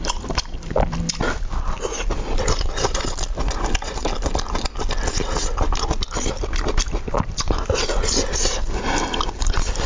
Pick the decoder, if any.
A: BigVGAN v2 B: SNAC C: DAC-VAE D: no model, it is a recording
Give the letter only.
D